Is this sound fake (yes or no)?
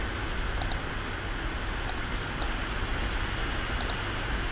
no